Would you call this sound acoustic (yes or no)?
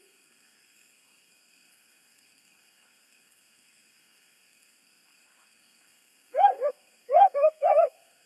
no